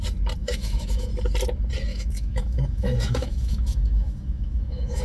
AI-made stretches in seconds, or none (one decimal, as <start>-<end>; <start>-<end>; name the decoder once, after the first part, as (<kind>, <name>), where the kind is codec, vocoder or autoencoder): 0.4-1.1 (autoencoder, DAC-VAE); 1.9-5.0